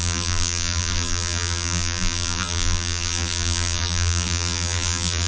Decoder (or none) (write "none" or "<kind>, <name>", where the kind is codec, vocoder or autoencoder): vocoder, BigVGAN v2